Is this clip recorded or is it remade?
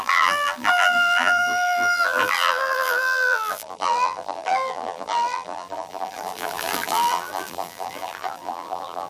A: remade